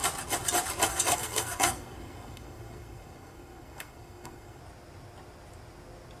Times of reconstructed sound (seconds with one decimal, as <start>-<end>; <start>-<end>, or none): 0.9-4.6